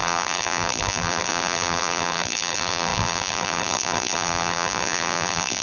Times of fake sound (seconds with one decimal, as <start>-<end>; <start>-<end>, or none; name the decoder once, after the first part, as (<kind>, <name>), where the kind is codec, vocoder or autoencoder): 0.0-5.6 (vocoder, BigVGAN v2)